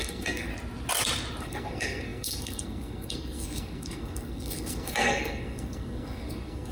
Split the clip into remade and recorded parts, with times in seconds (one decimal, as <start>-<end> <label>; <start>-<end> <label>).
0.0-0.5 remade; 0.5-1.4 recorded; 1.4-6.7 remade